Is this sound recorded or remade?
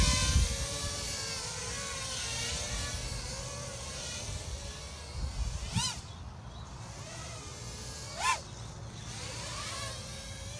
recorded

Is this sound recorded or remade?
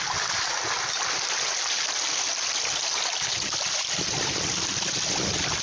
recorded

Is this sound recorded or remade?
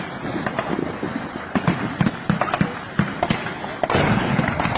recorded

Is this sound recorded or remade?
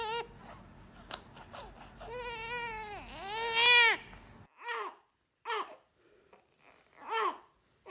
recorded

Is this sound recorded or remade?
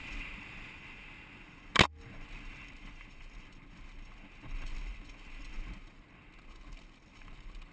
recorded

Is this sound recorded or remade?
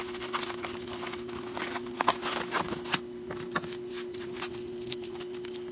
recorded